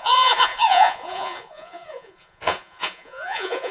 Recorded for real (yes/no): no